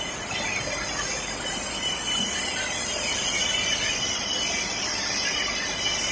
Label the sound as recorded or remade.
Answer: recorded